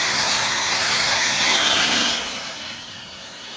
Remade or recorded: remade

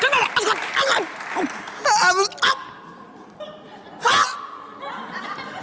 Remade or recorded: recorded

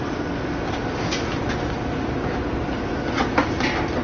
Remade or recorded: recorded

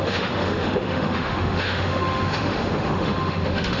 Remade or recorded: remade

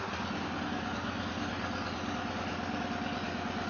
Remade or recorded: recorded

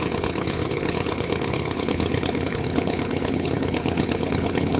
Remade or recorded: remade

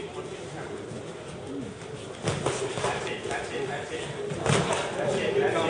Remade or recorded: recorded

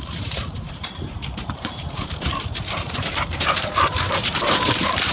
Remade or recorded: remade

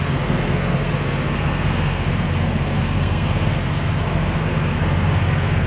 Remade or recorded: remade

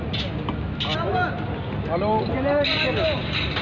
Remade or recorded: recorded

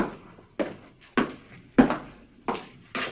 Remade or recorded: recorded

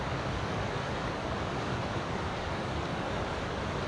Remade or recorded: remade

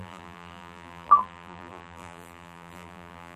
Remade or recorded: remade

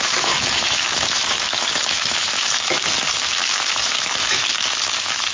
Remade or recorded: remade